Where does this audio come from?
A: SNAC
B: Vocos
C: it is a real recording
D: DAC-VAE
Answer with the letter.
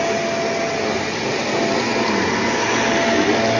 C